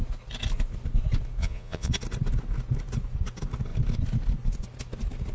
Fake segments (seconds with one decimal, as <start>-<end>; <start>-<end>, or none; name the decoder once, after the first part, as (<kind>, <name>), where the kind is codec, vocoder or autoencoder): 1.4-1.9 (vocoder, Vocos)